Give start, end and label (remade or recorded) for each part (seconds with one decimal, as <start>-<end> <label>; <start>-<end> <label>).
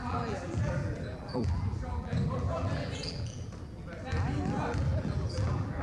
0.0-3.5 remade; 3.5-4.9 recorded; 4.9-5.8 remade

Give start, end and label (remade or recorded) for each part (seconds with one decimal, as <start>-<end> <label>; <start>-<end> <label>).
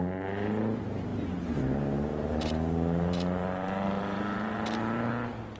0.0-1.1 recorded; 1.1-1.6 remade; 1.6-2.1 recorded; 2.1-5.1 remade; 5.1-5.6 recorded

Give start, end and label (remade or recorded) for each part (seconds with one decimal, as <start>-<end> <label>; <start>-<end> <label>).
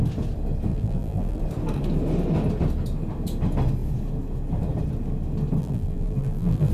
0.0-0.7 recorded; 0.7-1.4 remade; 1.4-5.6 recorded; 5.6-6.7 remade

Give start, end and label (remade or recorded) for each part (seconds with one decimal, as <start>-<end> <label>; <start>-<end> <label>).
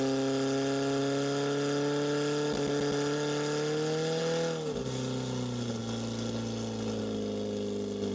0.0-8.1 recorded